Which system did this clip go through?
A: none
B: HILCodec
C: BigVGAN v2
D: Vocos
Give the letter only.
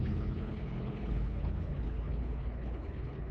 B